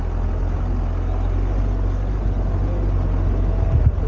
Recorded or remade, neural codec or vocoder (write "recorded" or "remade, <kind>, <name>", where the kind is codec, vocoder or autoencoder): recorded